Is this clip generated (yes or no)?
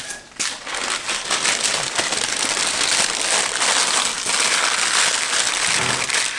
no